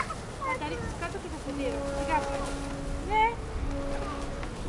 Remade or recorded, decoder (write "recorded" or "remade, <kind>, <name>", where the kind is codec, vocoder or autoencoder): recorded